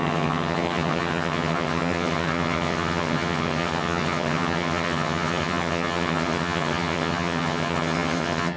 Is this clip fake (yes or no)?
yes